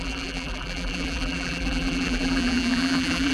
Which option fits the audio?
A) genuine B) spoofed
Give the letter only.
B